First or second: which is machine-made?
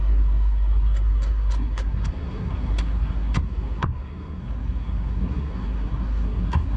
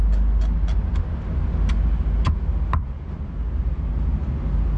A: first